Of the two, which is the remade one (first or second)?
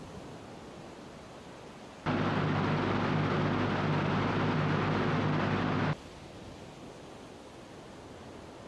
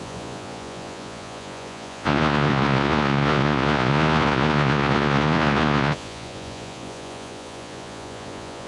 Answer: second